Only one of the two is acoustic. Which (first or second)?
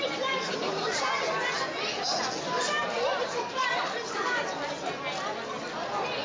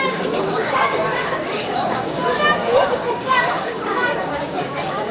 first